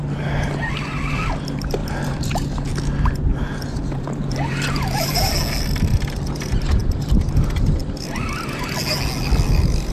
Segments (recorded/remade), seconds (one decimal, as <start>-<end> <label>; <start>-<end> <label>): 0.0-1.8 recorded; 1.8-2.7 remade; 2.7-3.3 recorded; 3.3-5.2 remade; 5.2-6.8 recorded; 6.8-7.3 remade; 7.3-9.9 recorded